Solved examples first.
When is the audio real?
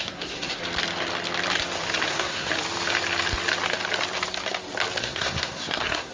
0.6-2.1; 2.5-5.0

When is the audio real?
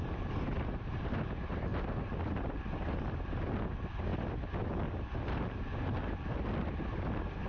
0.0-7.5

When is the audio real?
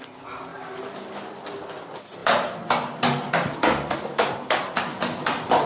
0.0-5.7